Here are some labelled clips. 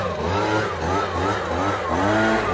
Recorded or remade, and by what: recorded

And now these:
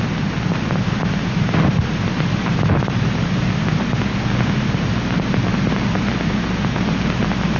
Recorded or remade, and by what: recorded